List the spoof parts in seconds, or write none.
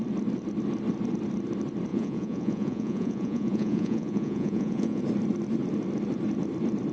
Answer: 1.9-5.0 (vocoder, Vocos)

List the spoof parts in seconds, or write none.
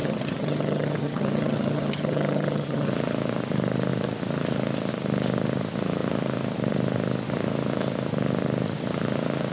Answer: 0.0-2.9 (vocoder, HiFi-GAN)